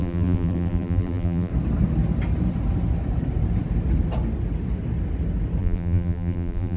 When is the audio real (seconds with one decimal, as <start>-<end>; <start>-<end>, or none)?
1.5-5.6